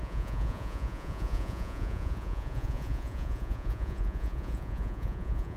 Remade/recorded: remade